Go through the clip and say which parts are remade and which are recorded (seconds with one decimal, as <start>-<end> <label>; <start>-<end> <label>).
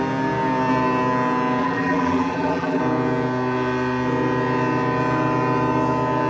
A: 0.0-1.6 recorded; 1.6-2.8 remade; 2.8-6.3 recorded